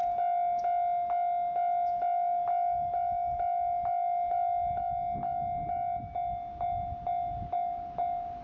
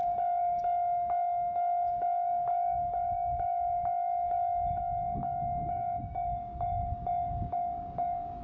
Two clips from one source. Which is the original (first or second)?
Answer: first